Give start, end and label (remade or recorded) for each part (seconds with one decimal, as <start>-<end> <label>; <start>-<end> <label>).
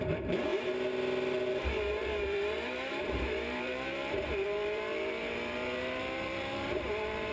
0.0-0.5 remade; 0.5-1.5 recorded; 1.5-7.3 remade